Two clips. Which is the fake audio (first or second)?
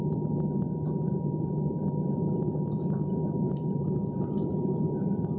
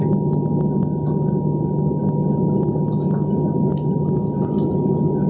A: first